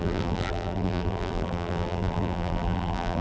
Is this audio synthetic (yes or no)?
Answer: yes